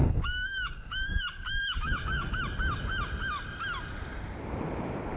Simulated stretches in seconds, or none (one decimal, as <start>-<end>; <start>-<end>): 0.0-2.4